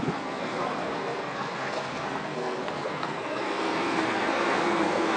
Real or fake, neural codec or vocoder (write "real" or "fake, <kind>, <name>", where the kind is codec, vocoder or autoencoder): fake, codec, SNAC